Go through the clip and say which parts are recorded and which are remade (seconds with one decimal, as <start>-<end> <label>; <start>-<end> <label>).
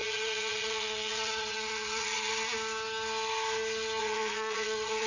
0.0-2.3 remade; 2.3-4.0 recorded; 4.0-5.1 remade